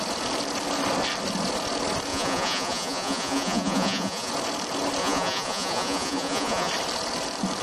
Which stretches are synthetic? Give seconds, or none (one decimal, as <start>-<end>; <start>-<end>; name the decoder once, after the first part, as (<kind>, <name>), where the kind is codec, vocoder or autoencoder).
2.1-4.3 (vocoder, Vocos); 5.0-6.7